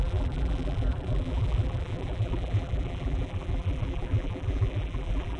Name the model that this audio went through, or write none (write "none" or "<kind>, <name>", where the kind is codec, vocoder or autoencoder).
vocoder, BigVGAN v2